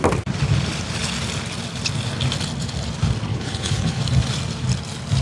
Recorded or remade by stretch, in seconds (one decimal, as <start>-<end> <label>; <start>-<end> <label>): 0.0-3.3 recorded; 3.3-4.0 remade; 4.0-5.2 recorded

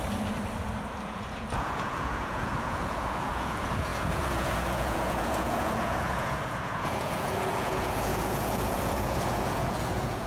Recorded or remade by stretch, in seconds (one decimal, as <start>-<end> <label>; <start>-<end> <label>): 0.0-1.1 recorded; 1.1-10.3 remade

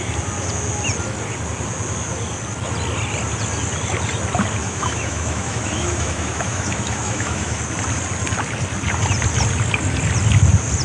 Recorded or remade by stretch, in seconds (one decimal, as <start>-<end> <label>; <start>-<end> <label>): 0.0-4.6 recorded; 4.6-7.6 remade; 7.6-10.8 recorded

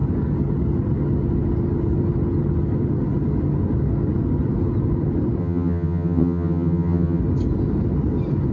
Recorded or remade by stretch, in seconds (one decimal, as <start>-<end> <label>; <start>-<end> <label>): 0.0-5.4 recorded; 5.4-7.2 remade; 7.2-8.5 recorded

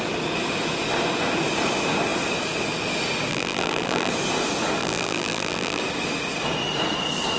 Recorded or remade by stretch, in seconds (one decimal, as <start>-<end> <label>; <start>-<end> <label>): 0.0-3.3 recorded; 3.3-4.1 remade; 4.1-4.8 recorded; 4.8-5.8 remade; 5.8-7.4 recorded